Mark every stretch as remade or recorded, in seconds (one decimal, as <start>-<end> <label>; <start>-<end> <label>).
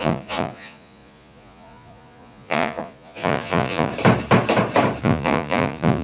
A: 0.0-3.9 remade; 3.9-5.0 recorded; 5.0-6.0 remade